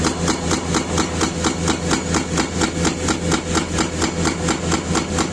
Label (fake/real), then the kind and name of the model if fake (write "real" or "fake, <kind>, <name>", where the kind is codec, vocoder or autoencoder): real